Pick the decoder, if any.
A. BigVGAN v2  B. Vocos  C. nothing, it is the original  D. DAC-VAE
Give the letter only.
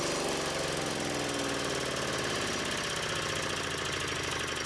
C